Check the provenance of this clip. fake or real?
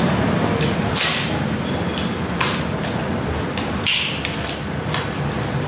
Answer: real